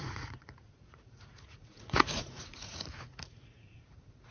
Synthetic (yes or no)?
yes